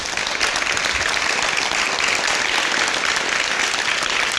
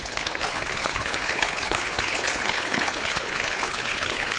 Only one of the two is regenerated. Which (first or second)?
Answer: second